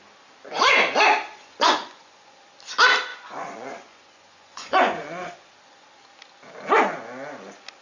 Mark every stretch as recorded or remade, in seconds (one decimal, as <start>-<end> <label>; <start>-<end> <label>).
0.0-0.5 recorded; 0.5-2.4 remade; 2.4-3.1 recorded; 3.1-5.5 remade; 5.5-7.8 recorded